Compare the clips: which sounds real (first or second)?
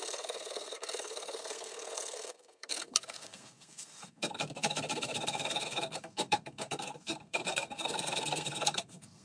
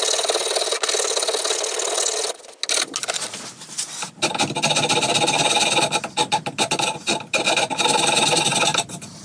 second